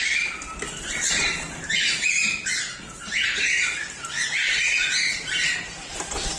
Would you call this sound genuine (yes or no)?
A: yes